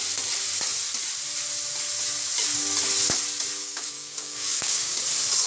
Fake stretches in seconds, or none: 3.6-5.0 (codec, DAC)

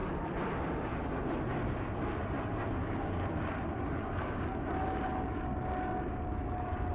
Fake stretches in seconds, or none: 2.8-6.9 (codec, DAC)

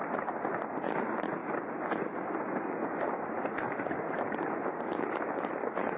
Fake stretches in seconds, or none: none

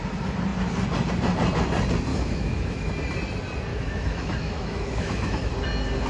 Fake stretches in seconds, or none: 2.1-2.9 (autoencoder, DAC-VAE); 3.7-5.5

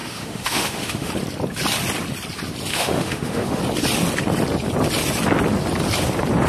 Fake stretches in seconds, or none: 0.0-1.1 (autoencoder, DAC-VAE); 2.7-3.6

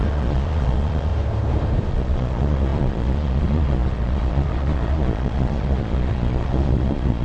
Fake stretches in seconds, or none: 0.0-1.1 (vocoder, Vocos); 1.9-7.2

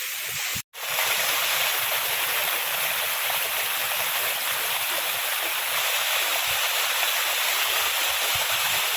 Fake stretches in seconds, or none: 2.4-5.4 (vocoder, BigVGAN v2)